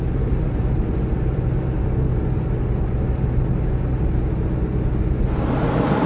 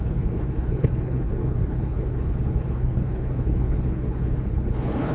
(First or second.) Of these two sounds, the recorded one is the first